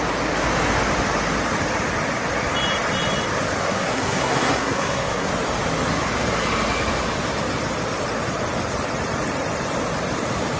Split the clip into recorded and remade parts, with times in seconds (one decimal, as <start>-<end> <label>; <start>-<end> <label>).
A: 0.0-3.6 recorded; 3.6-5.3 remade; 5.3-10.6 recorded

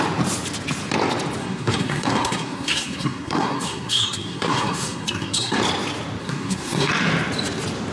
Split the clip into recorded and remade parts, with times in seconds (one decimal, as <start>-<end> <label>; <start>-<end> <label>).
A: 0.0-1.4 recorded; 1.4-5.6 remade; 5.6-6.2 recorded; 6.2-6.9 remade; 6.9-7.9 recorded

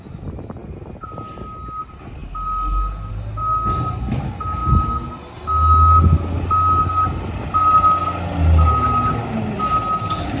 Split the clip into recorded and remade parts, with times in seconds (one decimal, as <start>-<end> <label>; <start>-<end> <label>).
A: 0.0-10.4 recorded

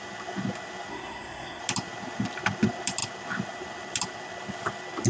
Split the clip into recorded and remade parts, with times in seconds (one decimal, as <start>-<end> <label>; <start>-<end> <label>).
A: 0.0-0.9 recorded; 0.9-1.6 remade; 1.6-5.1 recorded

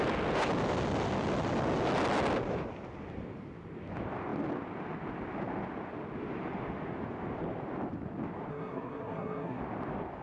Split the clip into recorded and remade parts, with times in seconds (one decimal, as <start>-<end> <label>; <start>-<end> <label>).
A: 0.0-8.5 recorded; 8.5-9.6 remade; 9.6-10.2 recorded